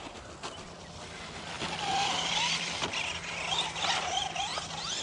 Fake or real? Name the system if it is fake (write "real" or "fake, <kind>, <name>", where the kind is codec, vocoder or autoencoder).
real